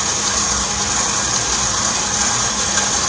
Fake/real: real